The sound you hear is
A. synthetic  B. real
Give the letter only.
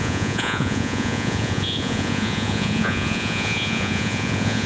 A